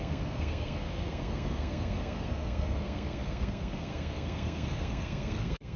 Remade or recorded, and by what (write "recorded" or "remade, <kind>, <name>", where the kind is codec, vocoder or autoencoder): remade, codec, SNAC